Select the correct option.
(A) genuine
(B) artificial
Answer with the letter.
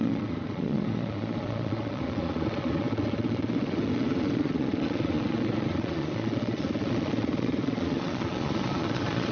B